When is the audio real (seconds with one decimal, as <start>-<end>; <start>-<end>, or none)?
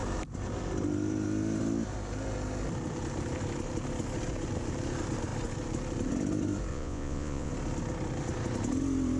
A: 0.0-6.7; 7.5-9.2